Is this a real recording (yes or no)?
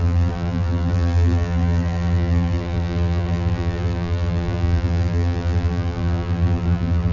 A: no